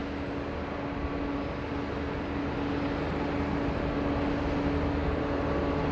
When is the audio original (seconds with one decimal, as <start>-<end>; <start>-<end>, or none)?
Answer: 0.0-5.9